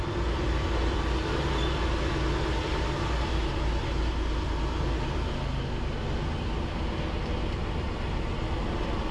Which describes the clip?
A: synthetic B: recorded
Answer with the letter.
B